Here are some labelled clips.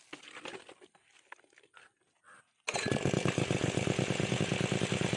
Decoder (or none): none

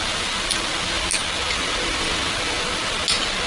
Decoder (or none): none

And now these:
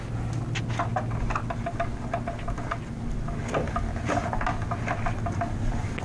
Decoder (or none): none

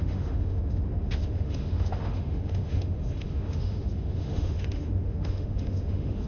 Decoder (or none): autoencoder, DAC-VAE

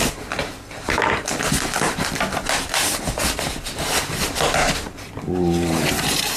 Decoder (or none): none